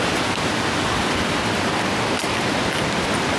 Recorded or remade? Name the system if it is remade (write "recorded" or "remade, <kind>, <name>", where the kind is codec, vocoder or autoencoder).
recorded